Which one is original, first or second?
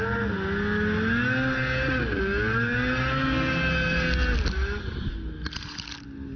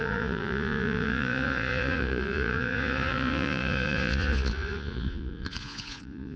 first